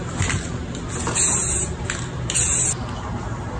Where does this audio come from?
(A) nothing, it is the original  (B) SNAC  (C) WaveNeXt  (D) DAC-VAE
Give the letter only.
A